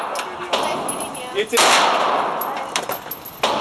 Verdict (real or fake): real